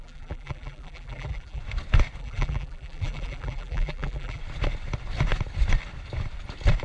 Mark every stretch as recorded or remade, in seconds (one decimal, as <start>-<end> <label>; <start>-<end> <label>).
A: 0.0-1.6 remade; 1.6-2.2 recorded; 2.2-4.4 remade; 4.4-6.8 recorded